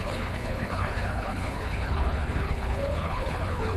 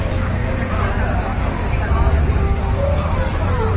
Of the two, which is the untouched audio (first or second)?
second